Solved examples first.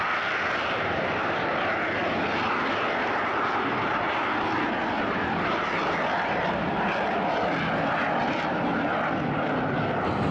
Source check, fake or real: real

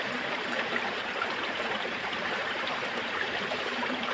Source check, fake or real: fake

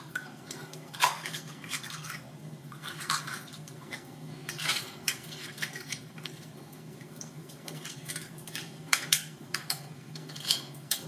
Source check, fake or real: fake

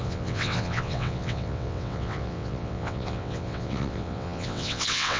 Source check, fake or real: fake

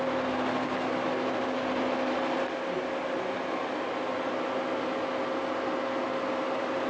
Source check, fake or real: real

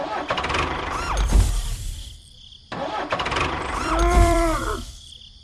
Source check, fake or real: fake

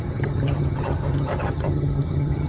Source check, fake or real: fake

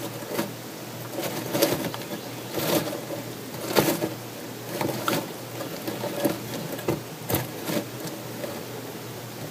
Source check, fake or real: real